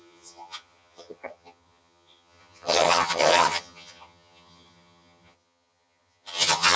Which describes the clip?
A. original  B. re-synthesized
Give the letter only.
B